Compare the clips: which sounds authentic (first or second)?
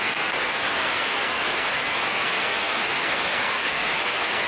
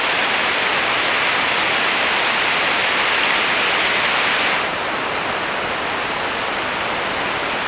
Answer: second